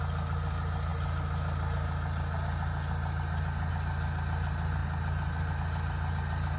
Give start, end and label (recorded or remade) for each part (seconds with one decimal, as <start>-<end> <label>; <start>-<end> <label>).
0.0-6.6 recorded